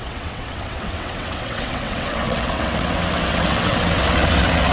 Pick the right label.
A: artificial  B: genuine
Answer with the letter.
A